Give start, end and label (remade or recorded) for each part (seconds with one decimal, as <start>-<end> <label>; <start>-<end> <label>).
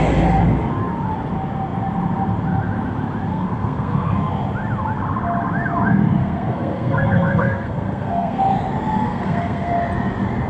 0.0-3.3 recorded; 3.3-4.1 remade; 4.1-6.2 recorded; 6.2-8.4 remade; 8.4-9.0 recorded; 9.0-9.7 remade; 9.7-10.5 recorded